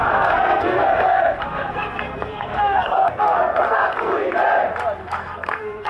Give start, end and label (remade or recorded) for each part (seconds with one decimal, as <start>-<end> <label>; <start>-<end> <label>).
0.0-4.1 remade; 4.1-5.0 recorded; 5.0-5.9 remade